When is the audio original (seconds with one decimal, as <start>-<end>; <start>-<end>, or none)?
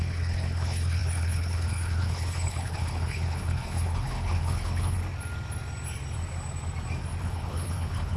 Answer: 5.0-7.2